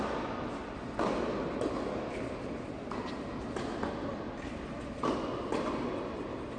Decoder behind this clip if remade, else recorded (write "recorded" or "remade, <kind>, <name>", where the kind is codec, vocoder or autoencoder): recorded